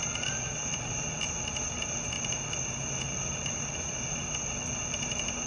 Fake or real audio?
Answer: real